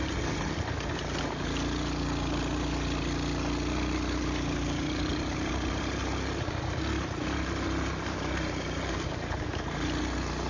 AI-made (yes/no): no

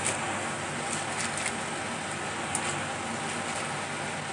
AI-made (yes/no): no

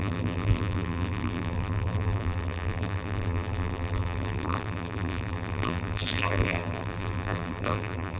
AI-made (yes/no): yes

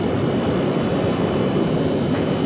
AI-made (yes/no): no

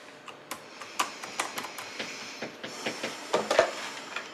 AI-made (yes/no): no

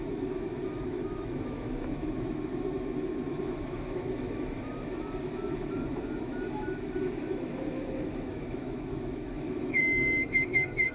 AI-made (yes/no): yes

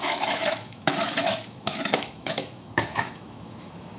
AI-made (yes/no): yes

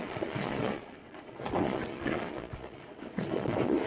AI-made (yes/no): yes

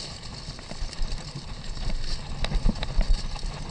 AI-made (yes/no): no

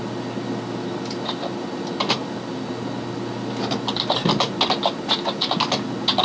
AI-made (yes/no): no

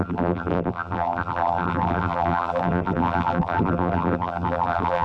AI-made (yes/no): yes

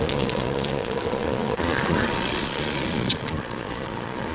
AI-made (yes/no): yes